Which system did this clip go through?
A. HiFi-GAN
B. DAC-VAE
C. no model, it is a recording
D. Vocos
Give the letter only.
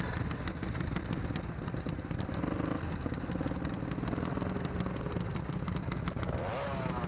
C